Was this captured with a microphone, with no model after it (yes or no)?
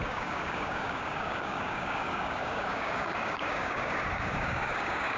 no